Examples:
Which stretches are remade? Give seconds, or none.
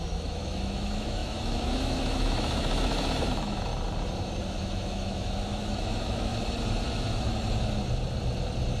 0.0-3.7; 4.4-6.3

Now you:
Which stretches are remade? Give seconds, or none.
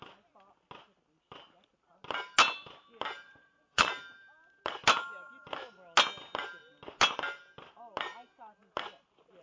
3.2-3.9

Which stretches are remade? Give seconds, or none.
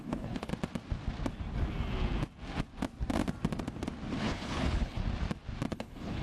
0.0-0.5; 4.2-5.0; 5.7-6.2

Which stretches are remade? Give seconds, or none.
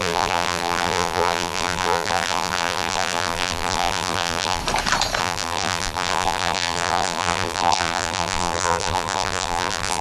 0.0-4.6; 5.2-10.0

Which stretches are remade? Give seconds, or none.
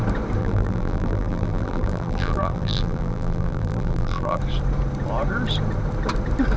0.4-4.4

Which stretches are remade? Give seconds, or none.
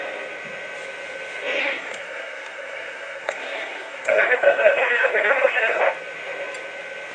1.6-5.8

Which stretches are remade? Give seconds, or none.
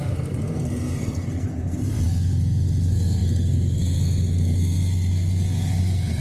0.0-6.2